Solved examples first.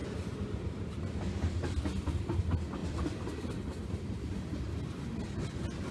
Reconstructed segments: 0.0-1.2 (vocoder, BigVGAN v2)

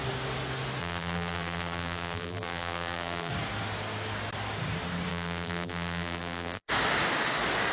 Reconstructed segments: 0.8-3.3 (vocoder, BigVGAN v2); 5.1-6.7

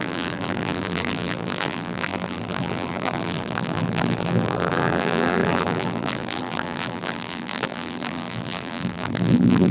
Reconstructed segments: 0.0-9.7 (vocoder, BigVGAN v2)